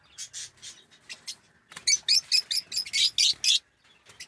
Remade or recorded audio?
recorded